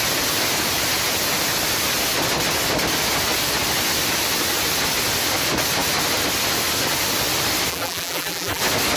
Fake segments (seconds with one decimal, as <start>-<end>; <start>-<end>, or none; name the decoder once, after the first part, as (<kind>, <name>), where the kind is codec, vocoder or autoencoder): 7.7-8.6 (vocoder, BigVGAN v2)